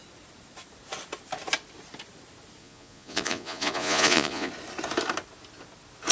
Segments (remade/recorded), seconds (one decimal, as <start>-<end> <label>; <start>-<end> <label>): 0.0-2.6 recorded; 2.6-4.5 remade; 4.5-6.1 recorded